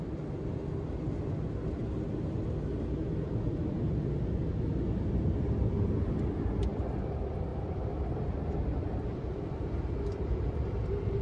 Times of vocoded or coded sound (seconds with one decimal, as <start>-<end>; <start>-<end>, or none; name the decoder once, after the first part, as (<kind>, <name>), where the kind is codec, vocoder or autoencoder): 0.0-1.8 (vocoder, BigVGAN v2); 6.0-11.2